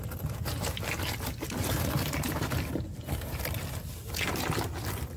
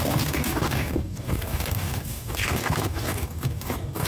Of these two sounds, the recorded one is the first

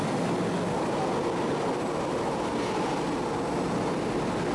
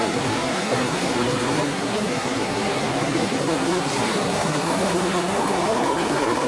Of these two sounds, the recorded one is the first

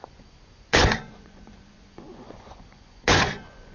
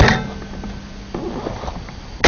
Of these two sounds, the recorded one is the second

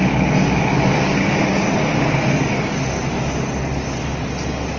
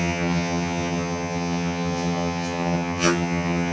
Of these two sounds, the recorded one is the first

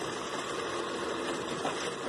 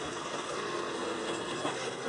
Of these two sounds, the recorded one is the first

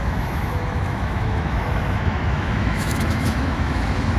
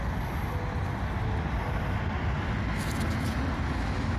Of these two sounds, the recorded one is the second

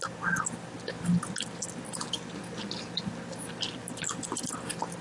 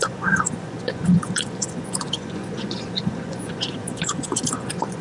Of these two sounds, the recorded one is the first